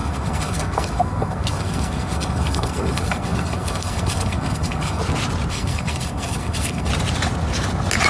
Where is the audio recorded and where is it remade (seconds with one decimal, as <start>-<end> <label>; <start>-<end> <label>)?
0.0-5.0 remade; 5.0-5.5 recorded; 5.5-6.9 remade; 6.9-8.1 recorded